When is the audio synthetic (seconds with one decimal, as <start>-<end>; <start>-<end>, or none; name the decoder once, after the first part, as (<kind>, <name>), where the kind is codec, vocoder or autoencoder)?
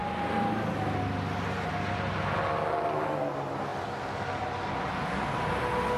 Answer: none